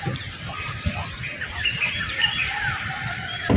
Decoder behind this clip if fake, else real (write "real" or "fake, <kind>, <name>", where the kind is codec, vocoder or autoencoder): real